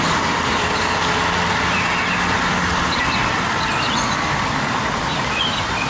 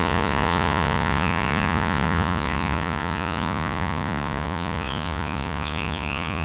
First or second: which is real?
first